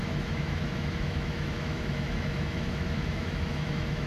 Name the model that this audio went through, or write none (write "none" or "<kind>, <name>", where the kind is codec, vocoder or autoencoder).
autoencoder, DAC-VAE